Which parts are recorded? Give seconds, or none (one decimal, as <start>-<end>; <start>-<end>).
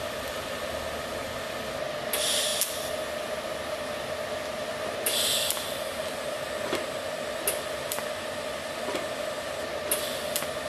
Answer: 0.0-10.7